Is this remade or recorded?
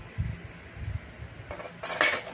recorded